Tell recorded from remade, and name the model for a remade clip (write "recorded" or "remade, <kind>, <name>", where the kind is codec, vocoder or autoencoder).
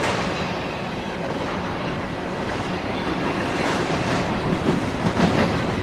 remade, vocoder, BigVGAN v2